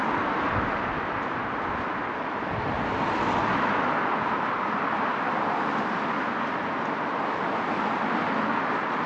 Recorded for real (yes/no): yes